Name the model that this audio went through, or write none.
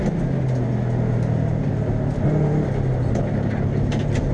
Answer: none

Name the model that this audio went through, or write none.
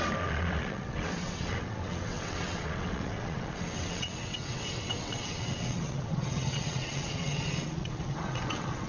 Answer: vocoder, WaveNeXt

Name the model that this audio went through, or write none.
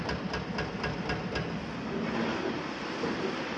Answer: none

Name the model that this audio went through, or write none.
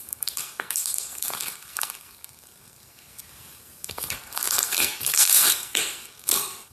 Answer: codec, SNAC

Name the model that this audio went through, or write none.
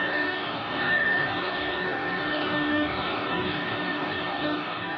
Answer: codec, DAC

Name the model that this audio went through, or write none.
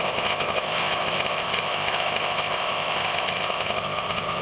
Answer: codec, ZipCodec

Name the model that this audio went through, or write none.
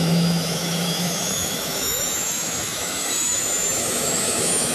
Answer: autoencoder, DAC-VAE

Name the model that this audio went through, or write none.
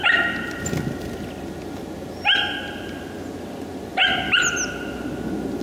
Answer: none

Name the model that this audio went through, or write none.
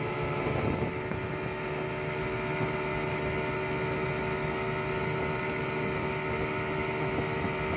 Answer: none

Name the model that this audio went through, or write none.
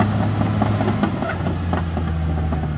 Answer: none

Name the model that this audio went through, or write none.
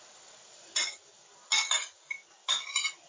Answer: none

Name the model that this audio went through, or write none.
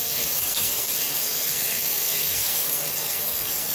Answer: codec, SNAC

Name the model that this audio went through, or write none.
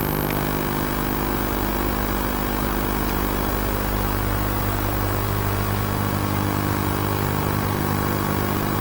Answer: none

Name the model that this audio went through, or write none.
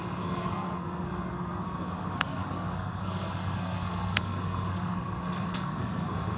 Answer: codec, SNAC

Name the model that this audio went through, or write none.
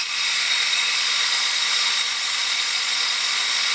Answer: vocoder, Vocos